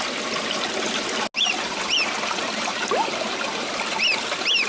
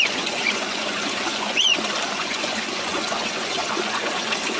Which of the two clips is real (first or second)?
first